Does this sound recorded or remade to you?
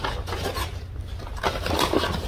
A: recorded